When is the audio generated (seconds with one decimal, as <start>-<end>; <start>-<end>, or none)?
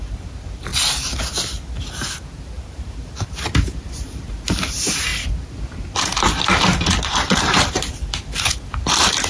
0.0-0.7; 2.8-9.3